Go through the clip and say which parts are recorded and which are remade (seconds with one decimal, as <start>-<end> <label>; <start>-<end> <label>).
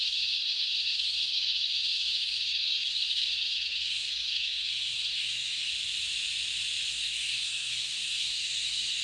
0.0-5.7 remade; 5.7-6.9 recorded; 6.9-9.0 remade